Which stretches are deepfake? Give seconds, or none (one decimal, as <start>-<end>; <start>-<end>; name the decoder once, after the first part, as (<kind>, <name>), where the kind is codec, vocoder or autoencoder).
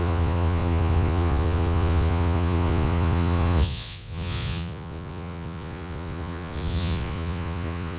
0.0-8.0 (vocoder, Vocos)